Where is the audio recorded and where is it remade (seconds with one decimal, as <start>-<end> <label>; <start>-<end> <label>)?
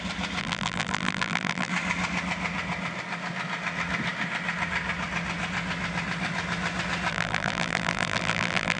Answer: 0.0-0.4 recorded; 0.4-1.7 remade; 1.7-7.1 recorded; 7.1-8.8 remade